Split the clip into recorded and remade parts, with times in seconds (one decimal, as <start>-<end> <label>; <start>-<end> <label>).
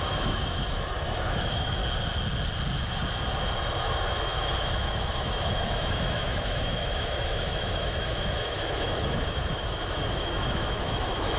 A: 0.0-1.8 remade; 1.8-3.8 recorded; 3.8-11.4 remade